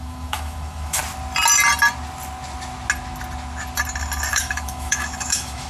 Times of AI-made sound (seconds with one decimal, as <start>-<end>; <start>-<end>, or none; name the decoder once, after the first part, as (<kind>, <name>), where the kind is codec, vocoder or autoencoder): 0.0-1.0 (autoencoder, DAC-VAE); 4.3-5.7